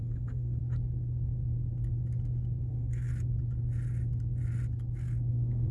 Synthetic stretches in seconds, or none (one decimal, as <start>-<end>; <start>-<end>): 0.0-0.6; 2.7-3.1; 5.3-5.7